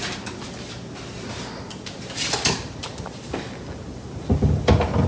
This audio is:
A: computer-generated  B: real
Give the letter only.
B